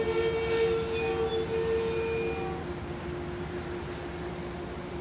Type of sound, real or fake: real